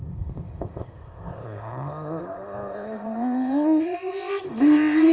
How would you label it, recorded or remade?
remade